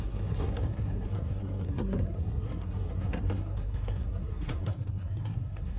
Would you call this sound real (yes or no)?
no